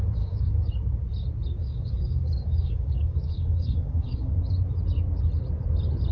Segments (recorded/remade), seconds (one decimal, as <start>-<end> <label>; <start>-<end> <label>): 0.0-0.7 remade; 0.7-1.6 recorded; 1.6-4.4 remade; 4.4-6.1 recorded